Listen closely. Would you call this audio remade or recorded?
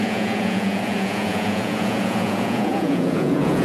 remade